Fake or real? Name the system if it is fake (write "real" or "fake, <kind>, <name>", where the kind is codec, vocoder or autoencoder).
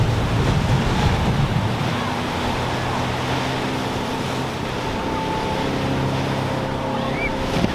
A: real